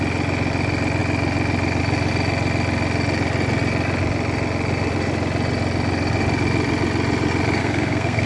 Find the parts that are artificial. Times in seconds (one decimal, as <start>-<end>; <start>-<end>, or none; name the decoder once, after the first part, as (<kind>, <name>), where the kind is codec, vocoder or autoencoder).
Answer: 7.6-8.3 (codec, SNAC)